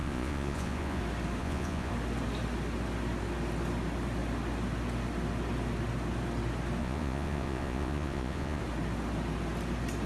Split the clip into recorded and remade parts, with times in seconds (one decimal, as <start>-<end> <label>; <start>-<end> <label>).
0.0-1.0 remade; 1.0-1.4 recorded; 1.4-1.9 remade; 1.9-6.8 recorded; 6.8-8.6 remade; 8.6-10.1 recorded